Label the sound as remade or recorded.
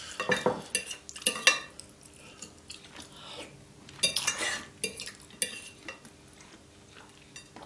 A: recorded